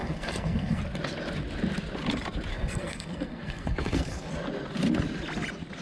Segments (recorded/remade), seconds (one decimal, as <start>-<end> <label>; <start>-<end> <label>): 0.0-0.8 remade; 0.8-2.5 recorded; 2.5-4.3 remade; 4.3-5.8 recorded